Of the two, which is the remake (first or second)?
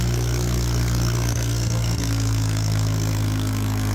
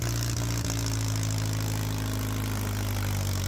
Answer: first